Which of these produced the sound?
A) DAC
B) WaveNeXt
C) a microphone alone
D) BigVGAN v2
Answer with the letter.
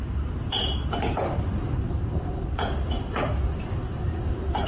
C